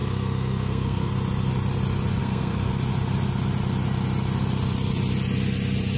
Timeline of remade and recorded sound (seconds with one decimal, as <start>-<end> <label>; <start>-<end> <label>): 0.0-1.1 remade; 1.1-2.2 recorded; 2.2-2.7 remade; 2.7-6.0 recorded